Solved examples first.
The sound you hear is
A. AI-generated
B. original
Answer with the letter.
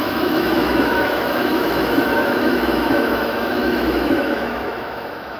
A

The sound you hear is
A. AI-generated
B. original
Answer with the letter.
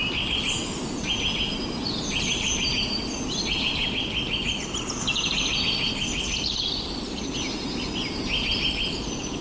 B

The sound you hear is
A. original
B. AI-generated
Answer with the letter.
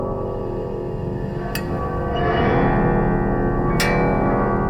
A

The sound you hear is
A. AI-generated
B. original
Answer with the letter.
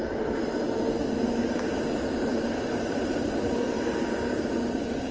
A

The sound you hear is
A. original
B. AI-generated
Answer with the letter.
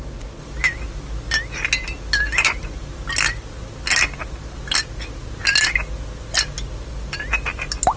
A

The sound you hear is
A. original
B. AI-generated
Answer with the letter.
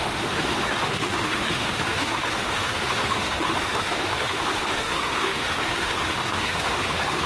B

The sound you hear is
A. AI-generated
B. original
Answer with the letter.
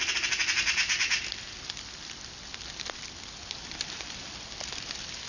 B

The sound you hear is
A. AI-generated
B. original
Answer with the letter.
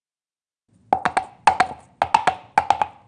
B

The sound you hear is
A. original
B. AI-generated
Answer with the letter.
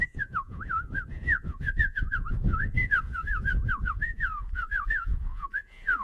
B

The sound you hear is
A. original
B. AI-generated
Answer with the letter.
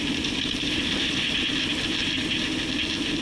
B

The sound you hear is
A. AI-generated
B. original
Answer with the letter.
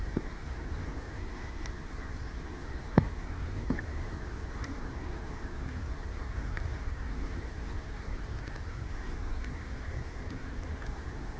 A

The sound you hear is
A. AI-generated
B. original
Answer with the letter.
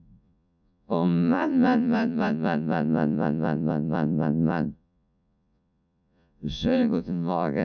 A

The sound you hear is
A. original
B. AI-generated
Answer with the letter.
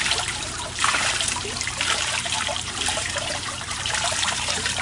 B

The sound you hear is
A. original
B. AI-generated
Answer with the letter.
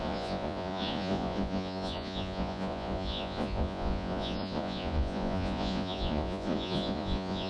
B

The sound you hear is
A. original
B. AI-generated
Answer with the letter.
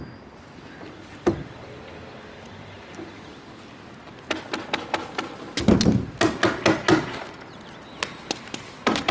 A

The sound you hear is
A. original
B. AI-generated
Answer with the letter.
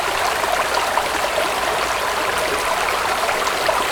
A